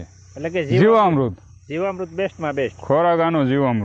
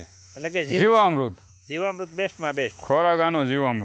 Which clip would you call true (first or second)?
first